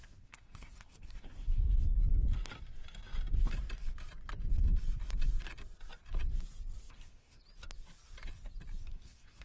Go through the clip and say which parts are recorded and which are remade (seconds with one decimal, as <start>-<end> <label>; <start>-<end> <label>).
0.0-1.6 remade; 1.6-6.9 recorded; 6.9-7.4 remade; 7.4-8.8 recorded; 8.8-9.4 remade